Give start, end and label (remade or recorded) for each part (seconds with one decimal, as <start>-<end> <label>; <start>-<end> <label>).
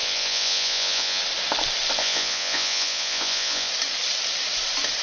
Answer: 0.0-1.2 remade; 1.2-2.0 recorded; 2.0-3.7 remade; 3.7-5.0 recorded